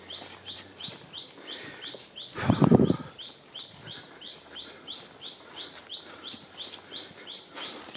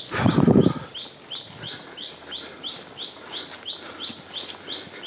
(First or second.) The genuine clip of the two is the second